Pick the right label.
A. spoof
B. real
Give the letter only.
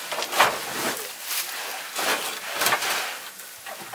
B